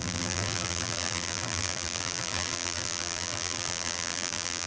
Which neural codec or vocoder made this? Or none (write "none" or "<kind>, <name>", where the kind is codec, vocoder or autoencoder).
vocoder, BigVGAN v2